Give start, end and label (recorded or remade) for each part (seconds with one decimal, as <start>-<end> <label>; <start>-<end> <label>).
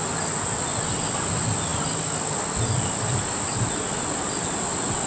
0.0-5.1 recorded